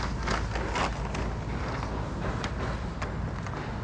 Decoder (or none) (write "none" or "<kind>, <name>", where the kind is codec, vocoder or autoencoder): none